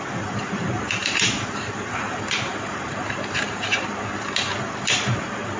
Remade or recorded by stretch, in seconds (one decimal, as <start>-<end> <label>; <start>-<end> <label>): 0.0-1.0 recorded; 1.0-3.9 remade; 3.9-5.6 recorded